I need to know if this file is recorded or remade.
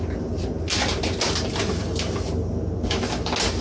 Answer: recorded